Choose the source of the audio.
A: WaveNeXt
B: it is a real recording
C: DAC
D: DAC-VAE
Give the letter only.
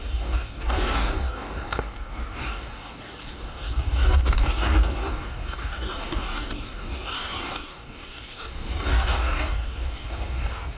C